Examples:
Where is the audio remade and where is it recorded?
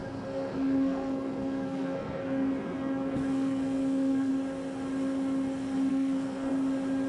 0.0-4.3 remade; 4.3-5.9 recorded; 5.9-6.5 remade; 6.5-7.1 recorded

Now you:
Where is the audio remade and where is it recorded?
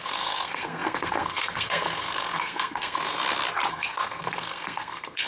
0.0-3.0 remade; 3.0-3.7 recorded; 3.7-5.3 remade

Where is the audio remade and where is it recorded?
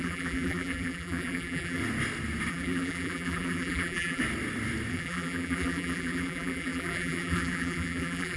0.0-1.8 remade; 1.8-2.5 recorded; 2.5-4.2 remade; 4.2-4.9 recorded; 4.9-8.4 remade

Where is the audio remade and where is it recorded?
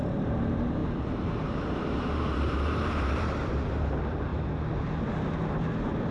0.0-4.3 remade; 4.3-5.1 recorded; 5.1-6.1 remade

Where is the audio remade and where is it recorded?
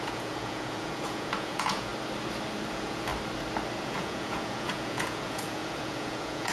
0.0-1.9 remade; 1.9-2.7 recorded; 2.7-3.1 remade; 3.1-3.8 recorded; 3.8-6.5 remade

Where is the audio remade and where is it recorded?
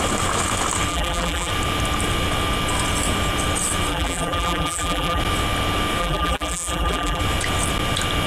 0.0-0.9 recorded; 0.9-1.5 remade; 1.5-3.9 recorded; 3.9-5.2 remade; 5.2-6.0 recorded; 6.0-7.2 remade; 7.2-8.3 recorded